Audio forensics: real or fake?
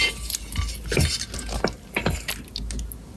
real